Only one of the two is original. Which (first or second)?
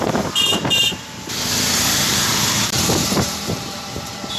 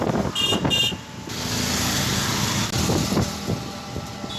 second